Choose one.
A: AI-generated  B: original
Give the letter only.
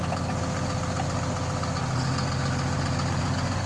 B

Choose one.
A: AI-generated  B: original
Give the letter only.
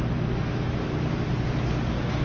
B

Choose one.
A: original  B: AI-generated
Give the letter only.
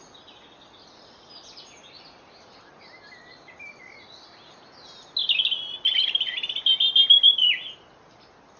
A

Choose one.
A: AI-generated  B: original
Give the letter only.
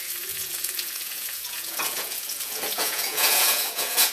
A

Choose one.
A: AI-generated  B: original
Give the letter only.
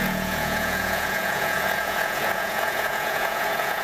A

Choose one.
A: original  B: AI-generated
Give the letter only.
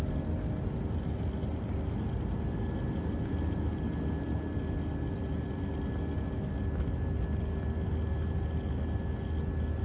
A